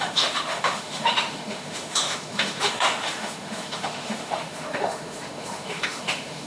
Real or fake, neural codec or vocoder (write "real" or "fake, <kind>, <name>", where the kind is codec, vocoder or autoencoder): fake, autoencoder, DAC-VAE